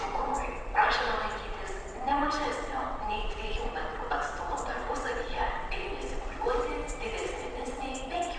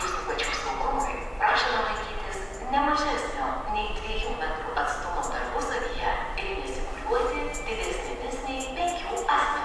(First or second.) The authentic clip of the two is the second